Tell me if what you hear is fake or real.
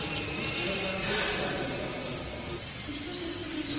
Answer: real